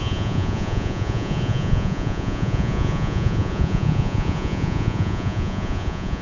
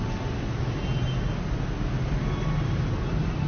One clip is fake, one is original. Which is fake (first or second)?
first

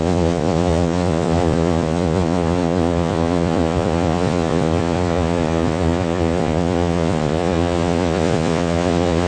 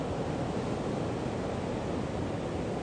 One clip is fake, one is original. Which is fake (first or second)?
first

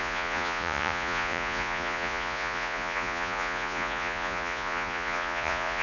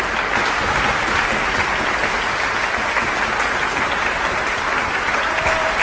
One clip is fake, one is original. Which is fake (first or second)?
first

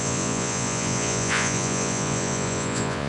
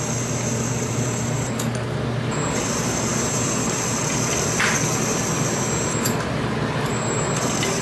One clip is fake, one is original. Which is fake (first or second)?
first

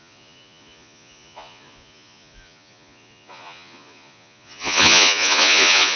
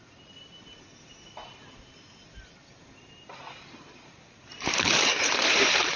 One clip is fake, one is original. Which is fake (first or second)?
first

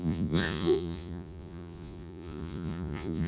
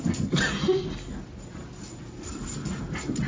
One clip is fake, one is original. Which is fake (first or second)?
first